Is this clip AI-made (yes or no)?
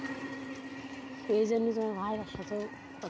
no